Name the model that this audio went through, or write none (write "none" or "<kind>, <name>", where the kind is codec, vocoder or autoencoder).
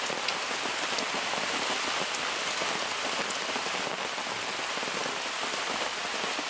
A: none